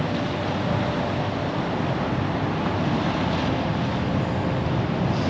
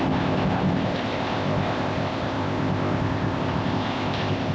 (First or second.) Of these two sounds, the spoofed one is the second